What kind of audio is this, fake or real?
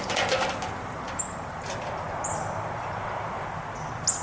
real